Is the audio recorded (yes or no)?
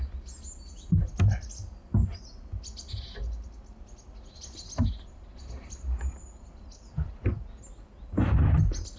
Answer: yes